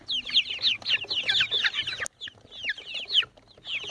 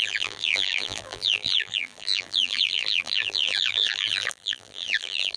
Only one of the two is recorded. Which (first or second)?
first